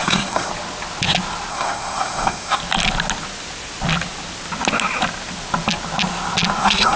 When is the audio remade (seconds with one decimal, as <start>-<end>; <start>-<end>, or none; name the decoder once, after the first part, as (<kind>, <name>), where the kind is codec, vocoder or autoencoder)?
0.0-0.5 (codec, SNAC); 1.5-2.6; 6.6-7.0